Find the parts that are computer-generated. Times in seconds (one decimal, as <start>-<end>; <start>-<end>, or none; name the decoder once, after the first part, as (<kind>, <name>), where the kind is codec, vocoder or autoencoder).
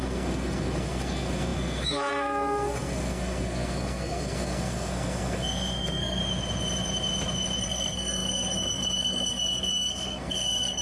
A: 0.0-6.2 (codec, SNAC); 7.6-10.8